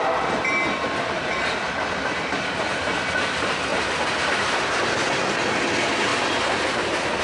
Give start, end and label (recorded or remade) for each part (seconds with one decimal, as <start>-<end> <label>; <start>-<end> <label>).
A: 0.0-7.2 recorded